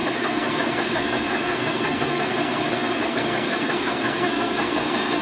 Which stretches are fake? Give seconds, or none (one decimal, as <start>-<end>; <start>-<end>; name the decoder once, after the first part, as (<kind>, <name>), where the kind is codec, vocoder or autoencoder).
0.0-5.2 (codec, SNAC)